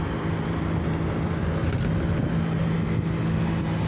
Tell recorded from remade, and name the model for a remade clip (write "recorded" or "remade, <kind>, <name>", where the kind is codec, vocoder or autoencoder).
recorded